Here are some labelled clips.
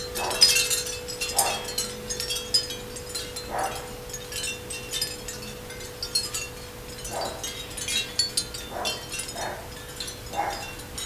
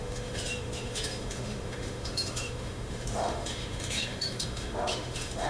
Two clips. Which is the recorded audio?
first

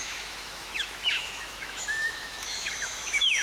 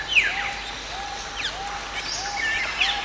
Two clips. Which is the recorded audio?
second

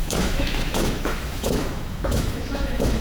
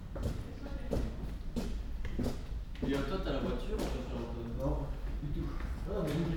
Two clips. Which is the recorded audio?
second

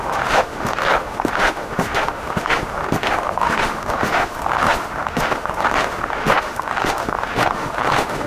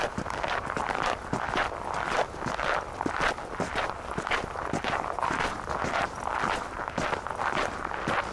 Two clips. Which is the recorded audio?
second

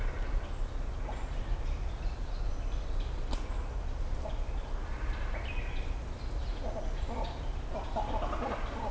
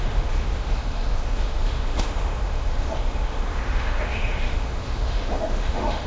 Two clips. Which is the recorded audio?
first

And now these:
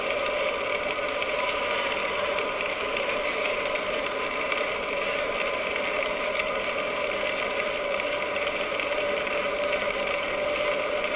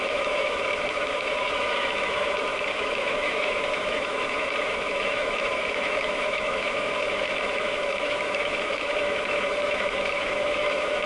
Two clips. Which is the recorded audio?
first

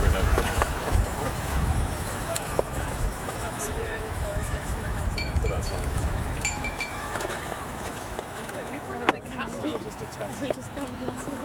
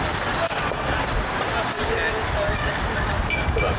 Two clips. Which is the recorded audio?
second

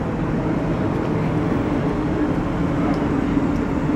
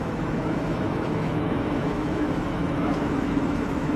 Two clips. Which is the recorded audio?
first